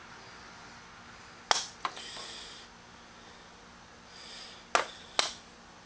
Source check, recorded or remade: recorded